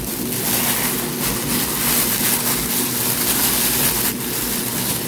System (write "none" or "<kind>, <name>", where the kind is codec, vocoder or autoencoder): none